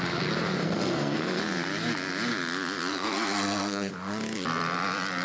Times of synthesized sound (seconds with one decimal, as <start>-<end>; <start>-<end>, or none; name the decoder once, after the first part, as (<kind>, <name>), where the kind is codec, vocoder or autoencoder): 0.6-1.4 (codec, SNAC); 2.9-3.9